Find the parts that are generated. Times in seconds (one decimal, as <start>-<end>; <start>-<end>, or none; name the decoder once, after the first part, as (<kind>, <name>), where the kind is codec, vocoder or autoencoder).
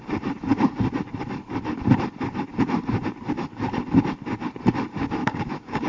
5.2-5.9 (codec, DAC)